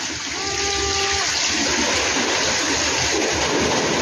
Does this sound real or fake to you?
real